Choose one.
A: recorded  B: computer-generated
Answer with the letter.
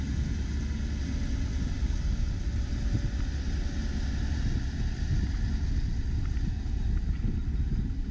A